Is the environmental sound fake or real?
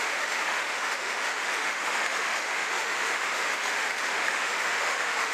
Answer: fake